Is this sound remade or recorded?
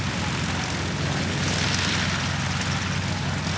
recorded